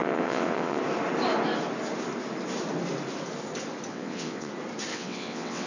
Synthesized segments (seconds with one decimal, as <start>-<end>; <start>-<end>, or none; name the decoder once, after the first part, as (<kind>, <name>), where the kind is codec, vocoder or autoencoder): 0.0-0.8 (vocoder, WaveNeXt); 3.9-4.5; 4.9-5.7